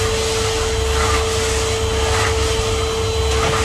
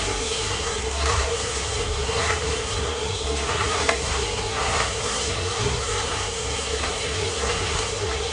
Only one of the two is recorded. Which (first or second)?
first